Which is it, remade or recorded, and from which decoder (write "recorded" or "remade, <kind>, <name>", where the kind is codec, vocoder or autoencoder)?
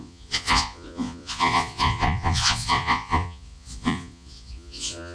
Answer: remade, vocoder, Vocos